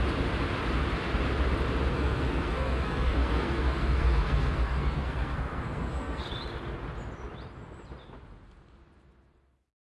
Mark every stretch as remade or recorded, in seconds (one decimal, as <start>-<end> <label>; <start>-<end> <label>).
0.0-1.9 recorded; 1.9-6.2 remade; 6.2-9.9 recorded